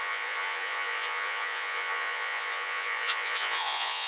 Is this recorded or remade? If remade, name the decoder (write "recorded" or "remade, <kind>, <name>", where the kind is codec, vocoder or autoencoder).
remade, vocoder, Vocos